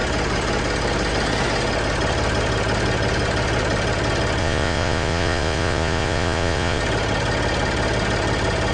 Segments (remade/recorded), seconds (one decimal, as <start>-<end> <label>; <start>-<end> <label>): 0.0-4.4 recorded; 4.4-6.8 remade; 6.8-8.7 recorded